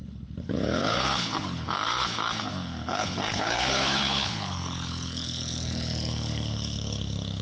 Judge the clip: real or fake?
fake